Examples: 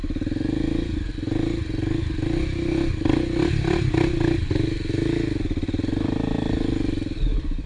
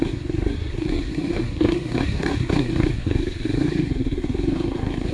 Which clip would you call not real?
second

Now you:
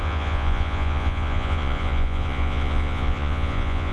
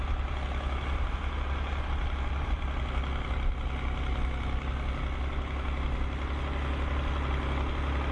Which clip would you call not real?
first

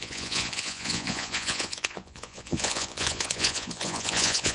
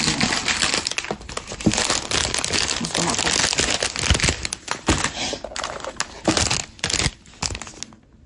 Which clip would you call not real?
first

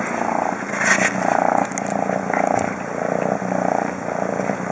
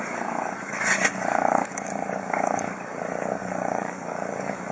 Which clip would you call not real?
second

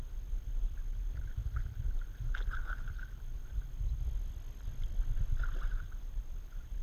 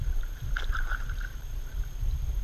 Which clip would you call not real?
second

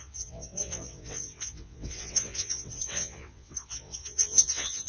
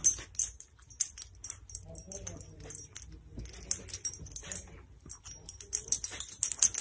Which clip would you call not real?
first